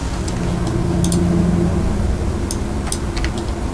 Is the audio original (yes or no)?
yes